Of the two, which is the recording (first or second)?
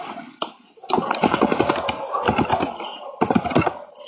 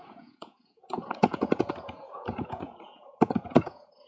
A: first